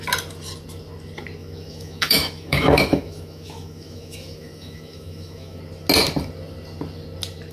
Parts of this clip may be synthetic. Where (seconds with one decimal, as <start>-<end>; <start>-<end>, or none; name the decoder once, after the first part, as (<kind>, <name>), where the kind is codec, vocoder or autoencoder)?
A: 1.4-5.6 (autoencoder, DAC-VAE)